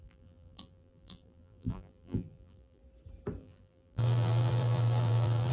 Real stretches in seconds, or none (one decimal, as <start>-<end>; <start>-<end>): 2.8-3.4